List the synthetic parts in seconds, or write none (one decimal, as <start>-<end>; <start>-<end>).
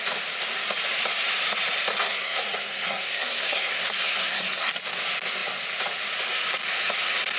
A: 1.9-4.7